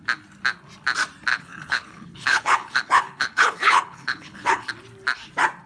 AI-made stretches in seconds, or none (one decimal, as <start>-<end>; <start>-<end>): 1.3-4.7

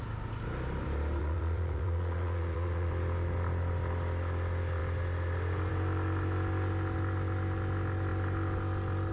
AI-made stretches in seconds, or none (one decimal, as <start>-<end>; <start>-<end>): 1.2-2.9

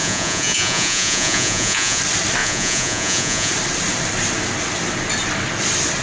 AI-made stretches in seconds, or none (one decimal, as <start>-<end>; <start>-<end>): 0.0-2.0; 2.4-3.5

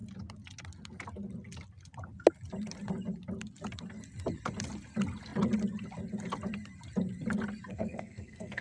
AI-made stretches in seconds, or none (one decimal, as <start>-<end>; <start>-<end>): 7.7-8.6

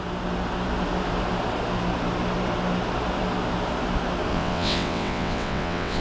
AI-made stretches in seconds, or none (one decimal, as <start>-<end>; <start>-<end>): 4.3-6.0